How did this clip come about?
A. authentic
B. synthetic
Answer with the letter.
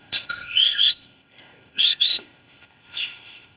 B